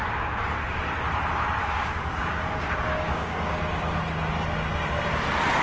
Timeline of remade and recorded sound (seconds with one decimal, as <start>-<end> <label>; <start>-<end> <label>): 0.0-1.6 recorded; 1.6-3.6 remade; 3.6-5.6 recorded

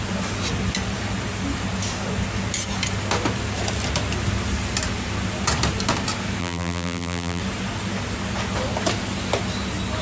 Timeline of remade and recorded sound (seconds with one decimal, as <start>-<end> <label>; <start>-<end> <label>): 0.0-6.4 recorded; 6.4-7.4 remade; 7.4-10.0 recorded

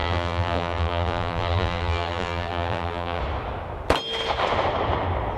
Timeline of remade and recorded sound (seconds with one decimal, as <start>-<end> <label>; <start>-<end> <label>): 0.0-3.2 remade; 3.2-5.4 recorded

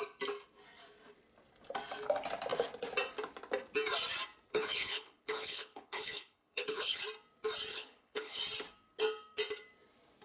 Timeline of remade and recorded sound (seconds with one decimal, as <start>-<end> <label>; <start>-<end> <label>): 0.0-4.5 recorded; 4.5-7.0 remade; 7.0-7.7 recorded; 7.7-8.4 remade; 8.4-10.2 recorded